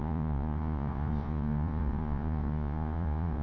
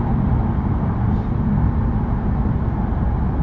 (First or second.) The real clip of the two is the second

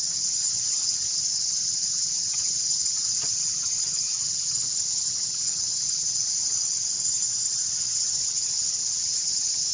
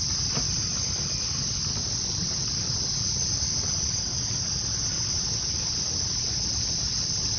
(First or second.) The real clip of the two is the second